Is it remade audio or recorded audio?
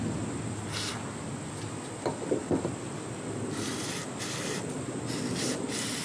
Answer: recorded